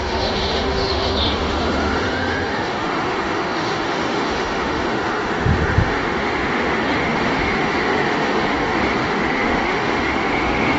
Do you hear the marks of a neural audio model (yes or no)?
yes